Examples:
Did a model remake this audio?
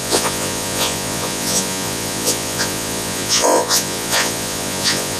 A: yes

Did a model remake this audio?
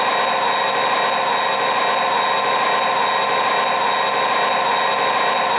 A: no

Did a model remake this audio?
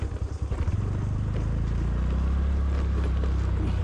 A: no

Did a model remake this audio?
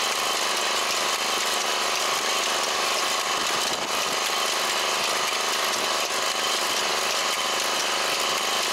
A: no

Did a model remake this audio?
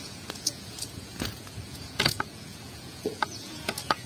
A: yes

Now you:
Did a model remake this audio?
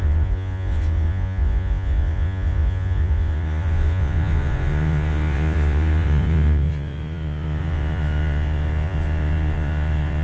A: yes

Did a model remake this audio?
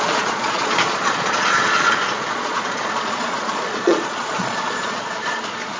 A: yes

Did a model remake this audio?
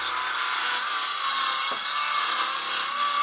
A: no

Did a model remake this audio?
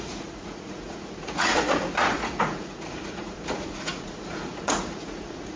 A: yes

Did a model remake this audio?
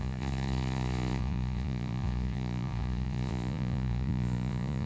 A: yes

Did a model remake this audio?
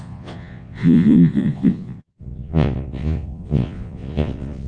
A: yes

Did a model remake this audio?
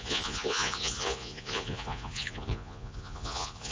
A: yes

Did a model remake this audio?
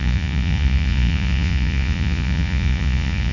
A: yes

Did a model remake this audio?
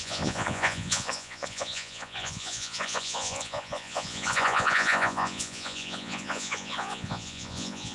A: yes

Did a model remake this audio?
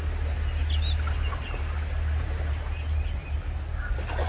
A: no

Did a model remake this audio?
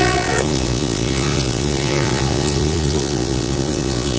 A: yes